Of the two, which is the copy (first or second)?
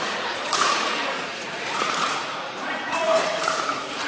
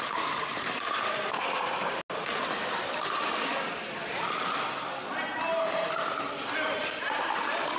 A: first